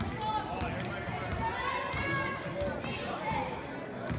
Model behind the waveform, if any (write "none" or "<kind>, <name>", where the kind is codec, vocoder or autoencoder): none